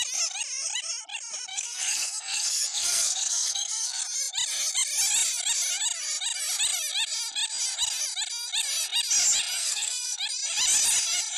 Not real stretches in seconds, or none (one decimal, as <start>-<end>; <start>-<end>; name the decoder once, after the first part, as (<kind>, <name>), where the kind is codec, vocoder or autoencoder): 1.5-4.0 (codec, SNAC); 9.6-10.2